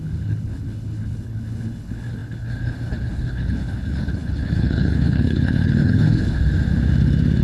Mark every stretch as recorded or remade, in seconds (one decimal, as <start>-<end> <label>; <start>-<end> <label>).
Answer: 0.0-6.4 remade; 6.4-7.4 recorded